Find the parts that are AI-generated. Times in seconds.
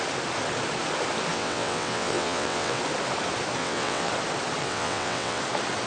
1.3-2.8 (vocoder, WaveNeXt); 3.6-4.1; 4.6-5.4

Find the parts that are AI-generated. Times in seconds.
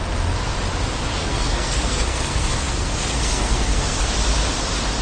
1.2-4.1 (codec, SNAC)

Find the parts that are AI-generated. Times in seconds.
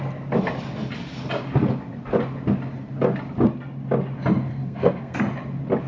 4.5-5.2 (codec, SNAC)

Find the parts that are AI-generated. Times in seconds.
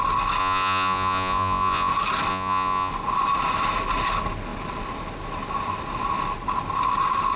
0.4-1.9 (vocoder, Vocos); 2.3-2.9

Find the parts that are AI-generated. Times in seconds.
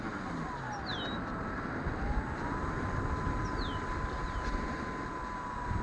none